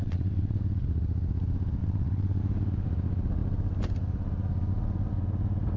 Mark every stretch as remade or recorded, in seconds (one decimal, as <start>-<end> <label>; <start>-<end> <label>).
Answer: 0.0-0.6 remade; 0.6-1.8 recorded; 1.8-2.4 remade; 2.4-5.8 recorded